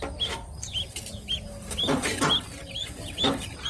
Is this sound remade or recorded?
recorded